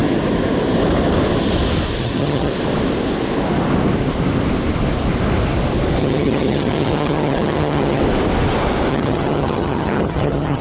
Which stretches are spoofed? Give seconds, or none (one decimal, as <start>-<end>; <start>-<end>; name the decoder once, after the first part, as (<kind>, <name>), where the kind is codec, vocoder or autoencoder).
2.0-2.5 (vocoder, HiFi-GAN); 6.0-8.0; 8.9-10.6